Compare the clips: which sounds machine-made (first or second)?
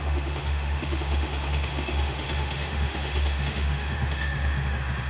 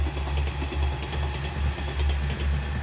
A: first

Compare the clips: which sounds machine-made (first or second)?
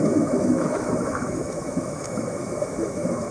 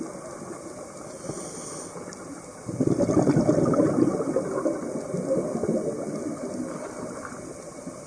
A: first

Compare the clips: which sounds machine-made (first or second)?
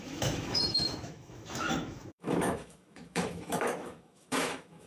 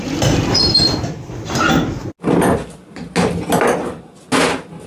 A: first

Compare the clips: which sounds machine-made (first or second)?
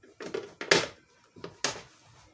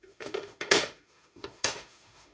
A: second